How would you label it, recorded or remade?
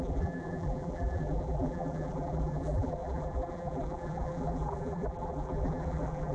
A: remade